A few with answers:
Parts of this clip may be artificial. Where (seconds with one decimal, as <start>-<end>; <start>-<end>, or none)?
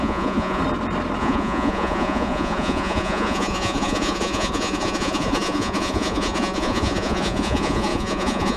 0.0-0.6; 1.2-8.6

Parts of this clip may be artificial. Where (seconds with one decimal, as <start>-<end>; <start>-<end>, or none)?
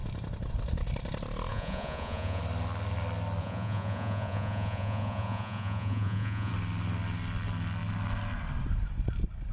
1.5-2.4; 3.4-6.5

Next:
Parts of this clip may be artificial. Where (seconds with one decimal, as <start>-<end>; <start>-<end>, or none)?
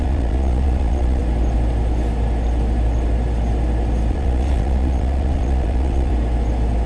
0.0-1.2; 4.1-6.1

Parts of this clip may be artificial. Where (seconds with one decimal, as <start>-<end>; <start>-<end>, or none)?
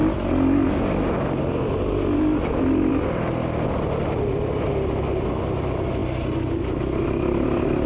none